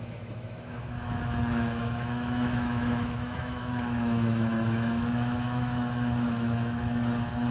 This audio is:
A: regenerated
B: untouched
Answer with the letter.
A